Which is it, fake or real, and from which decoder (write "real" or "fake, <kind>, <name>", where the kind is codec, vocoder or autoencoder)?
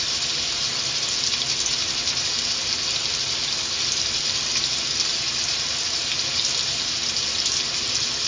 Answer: real